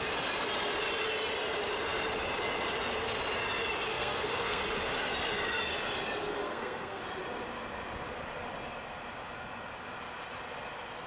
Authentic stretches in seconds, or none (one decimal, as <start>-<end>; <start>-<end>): 0.0-3.9; 4.6-6.4; 7.0-11.1